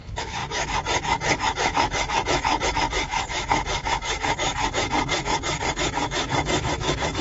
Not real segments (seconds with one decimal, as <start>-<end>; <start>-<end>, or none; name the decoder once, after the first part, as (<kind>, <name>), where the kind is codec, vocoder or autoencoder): 0.0-7.2 (autoencoder, DAC-VAE)

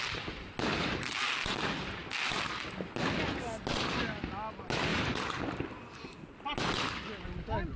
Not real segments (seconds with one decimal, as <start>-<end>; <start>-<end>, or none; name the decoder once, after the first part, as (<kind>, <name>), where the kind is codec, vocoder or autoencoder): none